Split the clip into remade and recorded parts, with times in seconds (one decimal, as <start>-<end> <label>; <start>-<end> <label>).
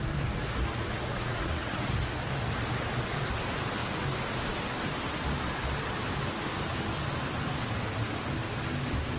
0.0-1.1 recorded; 1.1-1.9 remade; 1.9-9.2 recorded